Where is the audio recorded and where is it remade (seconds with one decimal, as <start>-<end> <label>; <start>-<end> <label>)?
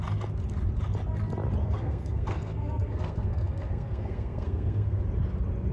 0.0-1.6 recorded; 1.6-5.0 remade; 5.0-5.7 recorded